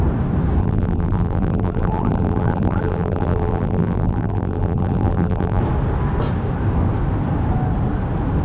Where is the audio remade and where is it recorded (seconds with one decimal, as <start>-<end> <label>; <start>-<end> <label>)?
0.0-0.6 recorded; 0.6-5.6 remade; 5.6-8.4 recorded

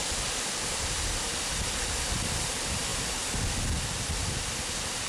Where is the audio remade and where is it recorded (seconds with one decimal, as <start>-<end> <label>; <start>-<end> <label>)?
0.0-5.1 recorded

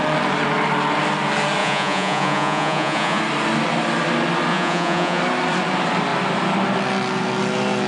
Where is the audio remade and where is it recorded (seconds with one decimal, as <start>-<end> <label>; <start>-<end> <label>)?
0.0-1.6 recorded; 1.6-3.2 remade; 3.2-4.5 recorded; 4.5-5.2 remade; 5.2-7.9 recorded